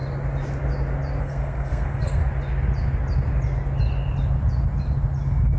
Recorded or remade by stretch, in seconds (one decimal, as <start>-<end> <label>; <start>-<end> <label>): 0.0-1.2 recorded; 1.2-2.2 remade; 2.2-5.6 recorded